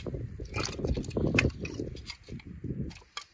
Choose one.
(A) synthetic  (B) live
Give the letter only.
B